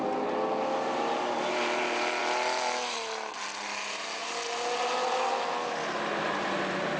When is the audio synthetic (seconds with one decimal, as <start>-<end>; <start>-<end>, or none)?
none